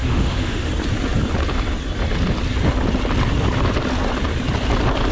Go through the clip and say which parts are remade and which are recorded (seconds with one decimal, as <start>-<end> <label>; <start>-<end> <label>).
0.0-0.7 remade; 0.7-5.1 recorded